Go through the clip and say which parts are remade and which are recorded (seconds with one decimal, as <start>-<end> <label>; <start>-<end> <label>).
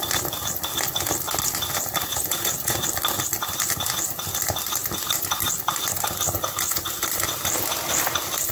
0.0-2.1 recorded; 2.1-2.7 remade; 2.7-8.5 recorded